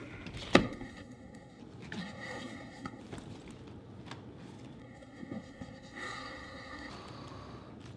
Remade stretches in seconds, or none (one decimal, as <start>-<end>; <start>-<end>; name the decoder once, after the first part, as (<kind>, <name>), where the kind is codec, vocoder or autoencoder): 0.6-1.6 (codec, SNAC); 2.0-3.0; 4.8-6.9